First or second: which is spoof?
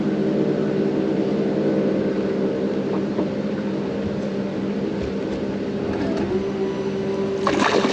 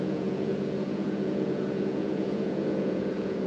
second